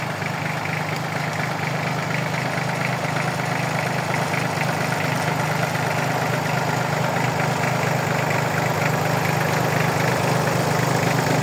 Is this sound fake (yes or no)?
no